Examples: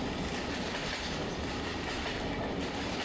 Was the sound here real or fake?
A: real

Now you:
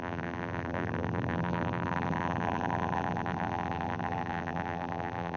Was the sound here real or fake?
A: fake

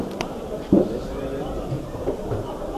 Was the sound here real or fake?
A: fake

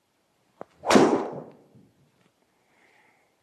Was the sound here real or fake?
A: fake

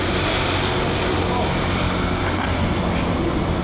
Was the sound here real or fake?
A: real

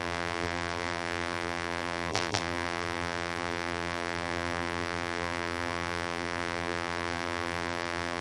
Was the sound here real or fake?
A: fake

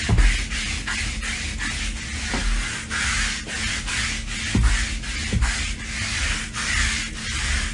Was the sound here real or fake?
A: real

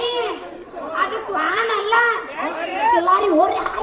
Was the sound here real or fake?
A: fake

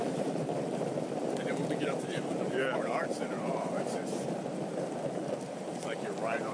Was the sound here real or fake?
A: fake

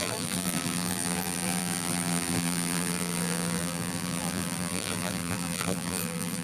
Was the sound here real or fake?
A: fake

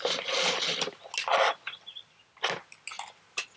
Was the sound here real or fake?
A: real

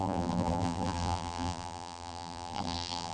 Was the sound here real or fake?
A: fake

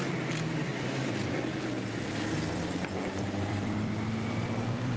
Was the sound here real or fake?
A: fake